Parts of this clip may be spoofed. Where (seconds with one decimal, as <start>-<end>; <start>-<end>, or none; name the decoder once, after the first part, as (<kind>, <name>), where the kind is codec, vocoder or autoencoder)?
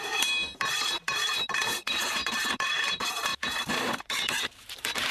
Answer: 0.0-3.3 (vocoder, BigVGAN v2); 4.0-5.1